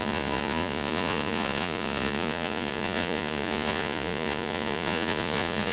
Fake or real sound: fake